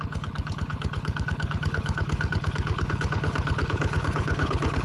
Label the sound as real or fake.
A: fake